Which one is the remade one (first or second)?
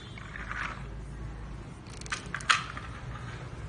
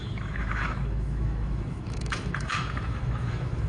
second